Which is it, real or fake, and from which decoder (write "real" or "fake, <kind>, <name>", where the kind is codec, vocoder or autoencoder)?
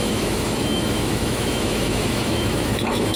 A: fake, autoencoder, DAC-VAE